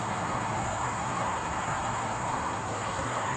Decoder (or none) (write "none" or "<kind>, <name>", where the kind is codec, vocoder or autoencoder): codec, SNAC